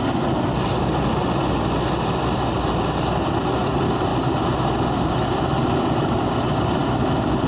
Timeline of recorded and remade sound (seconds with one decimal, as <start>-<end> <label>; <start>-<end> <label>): 0.0-7.5 recorded